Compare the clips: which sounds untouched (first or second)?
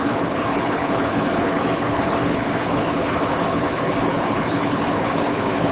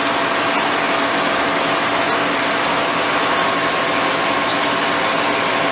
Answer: second